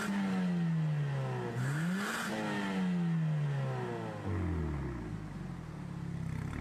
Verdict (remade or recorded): recorded